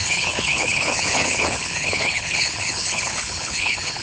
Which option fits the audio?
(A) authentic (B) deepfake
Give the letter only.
B